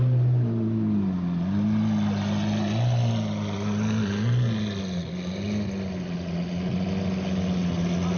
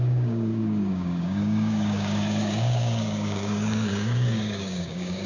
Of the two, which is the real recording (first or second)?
first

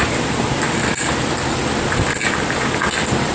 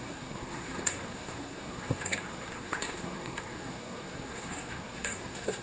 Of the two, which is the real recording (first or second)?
first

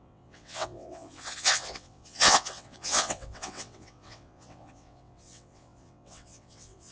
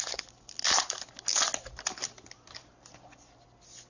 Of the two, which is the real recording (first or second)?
second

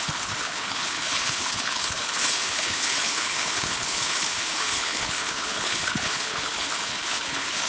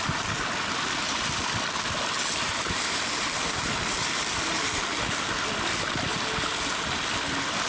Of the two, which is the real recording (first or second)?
second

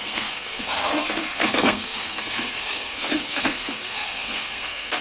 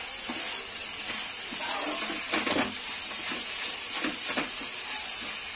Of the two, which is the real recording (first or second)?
second